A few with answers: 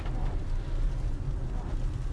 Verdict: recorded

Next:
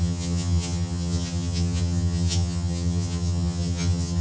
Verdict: remade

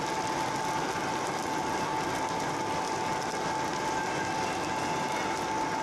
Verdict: recorded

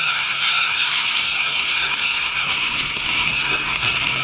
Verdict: remade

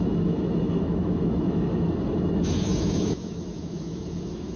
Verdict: remade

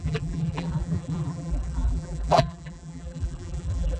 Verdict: remade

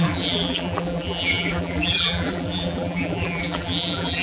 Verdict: remade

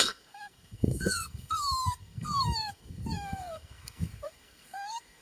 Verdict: remade